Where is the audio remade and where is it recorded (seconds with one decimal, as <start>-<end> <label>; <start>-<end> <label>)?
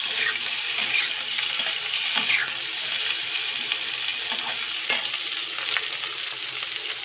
0.0-2.4 remade; 2.4-3.1 recorded; 3.1-4.1 remade; 4.1-6.4 recorded; 6.4-7.0 remade